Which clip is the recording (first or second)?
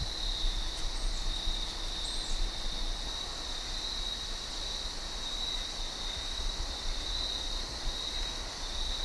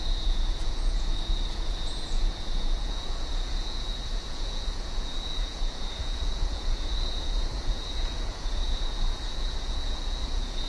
first